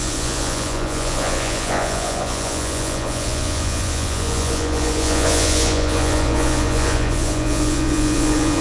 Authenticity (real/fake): fake